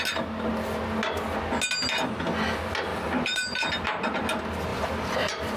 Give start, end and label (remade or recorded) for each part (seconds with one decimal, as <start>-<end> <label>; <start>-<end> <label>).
0.0-2.9 recorded; 2.9-3.7 remade; 3.7-4.7 recorded; 4.7-5.6 remade